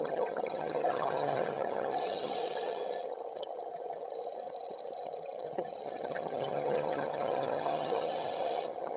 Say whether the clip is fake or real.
fake